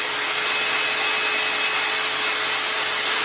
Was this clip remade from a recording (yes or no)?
no